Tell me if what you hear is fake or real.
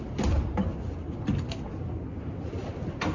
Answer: real